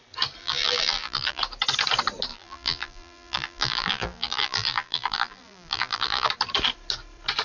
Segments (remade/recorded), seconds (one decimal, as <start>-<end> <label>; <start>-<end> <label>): 0.0-0.4 recorded; 0.4-1.4 remade; 1.4-2.3 recorded; 2.3-6.3 remade; 6.3-7.4 recorded